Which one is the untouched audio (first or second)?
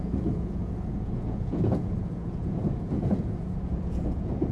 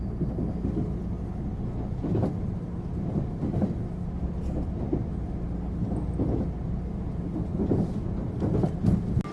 second